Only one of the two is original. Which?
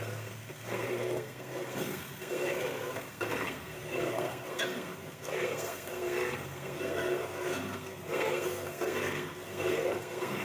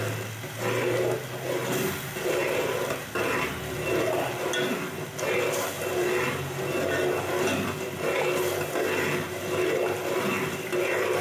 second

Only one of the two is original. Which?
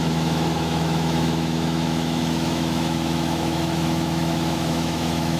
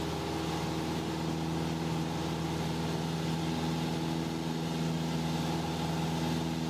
second